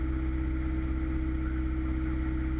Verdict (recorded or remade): recorded